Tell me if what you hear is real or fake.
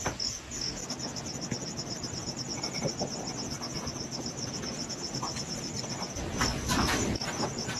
real